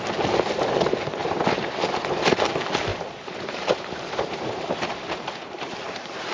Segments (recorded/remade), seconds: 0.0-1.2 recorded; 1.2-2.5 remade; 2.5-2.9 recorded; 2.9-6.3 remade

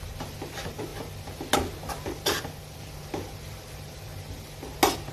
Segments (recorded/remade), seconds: 0.0-0.9 remade; 0.9-1.9 recorded; 1.9-4.1 remade; 4.1-5.1 recorded

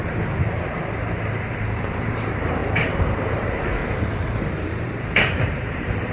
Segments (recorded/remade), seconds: 0.0-1.5 recorded; 1.5-2.6 remade; 2.6-3.2 recorded; 3.2-3.8 remade; 3.8-4.5 recorded; 4.5-6.1 remade

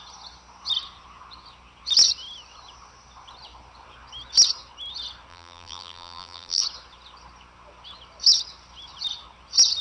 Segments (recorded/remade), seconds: 0.0-5.3 recorded; 5.3-6.6 remade; 6.6-9.8 recorded

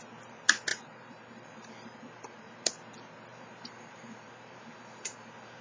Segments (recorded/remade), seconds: 0.0-0.7 recorded; 0.7-2.7 remade; 2.7-3.3 recorded; 3.3-5.6 remade

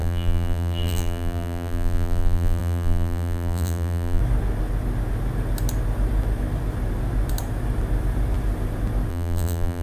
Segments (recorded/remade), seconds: 0.0-4.2 remade; 4.2-9.1 recorded; 9.1-9.8 remade